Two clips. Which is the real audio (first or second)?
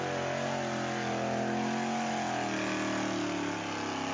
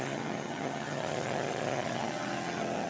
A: first